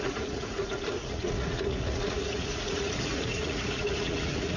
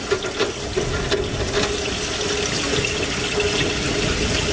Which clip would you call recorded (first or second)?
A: second